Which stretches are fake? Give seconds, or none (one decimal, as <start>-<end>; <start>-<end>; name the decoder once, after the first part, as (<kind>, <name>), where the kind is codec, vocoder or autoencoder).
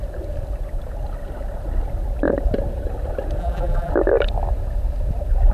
3.4-3.9 (vocoder, BigVGAN v2)